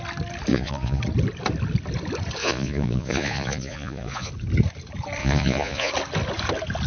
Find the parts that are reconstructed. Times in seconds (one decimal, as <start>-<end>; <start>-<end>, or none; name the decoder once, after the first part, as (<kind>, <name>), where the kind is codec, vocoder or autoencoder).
0.5-1.0 (vocoder, Vocos); 2.4-4.3; 5.2-5.9